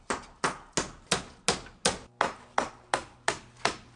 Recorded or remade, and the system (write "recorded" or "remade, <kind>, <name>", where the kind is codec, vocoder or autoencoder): recorded